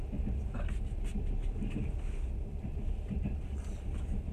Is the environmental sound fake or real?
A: real